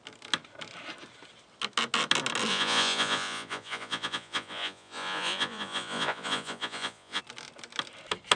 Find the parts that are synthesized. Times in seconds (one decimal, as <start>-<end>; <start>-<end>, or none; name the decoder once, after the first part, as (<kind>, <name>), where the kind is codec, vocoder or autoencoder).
2.5-7.2 (vocoder, Vocos)